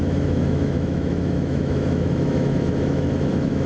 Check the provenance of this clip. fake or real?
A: fake